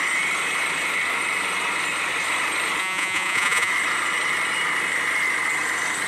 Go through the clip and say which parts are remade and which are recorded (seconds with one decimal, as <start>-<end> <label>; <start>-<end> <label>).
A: 0.0-2.8 recorded; 2.8-3.7 remade; 3.7-6.1 recorded